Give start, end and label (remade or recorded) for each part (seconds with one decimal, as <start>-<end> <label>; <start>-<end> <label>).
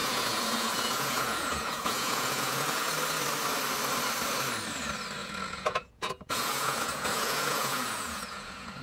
0.0-2.9 remade; 2.9-5.2 recorded; 5.2-8.8 remade